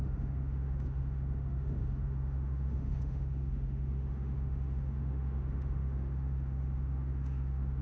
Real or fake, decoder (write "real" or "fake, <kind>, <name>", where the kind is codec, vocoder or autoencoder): fake, autoencoder, DAC-VAE